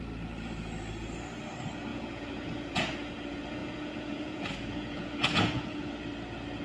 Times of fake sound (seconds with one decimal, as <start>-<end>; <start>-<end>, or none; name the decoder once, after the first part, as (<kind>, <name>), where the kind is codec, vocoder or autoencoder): 1.9-3.1 (vocoder, Vocos); 3.6-5.9